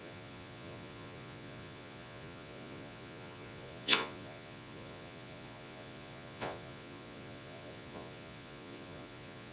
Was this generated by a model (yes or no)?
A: yes